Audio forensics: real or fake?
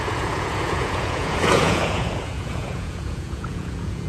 fake